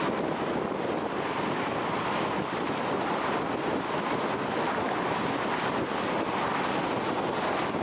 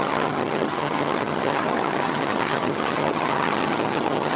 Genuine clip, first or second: first